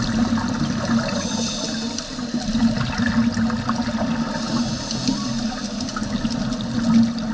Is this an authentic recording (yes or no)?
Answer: yes